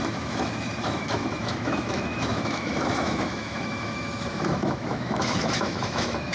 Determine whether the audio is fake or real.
fake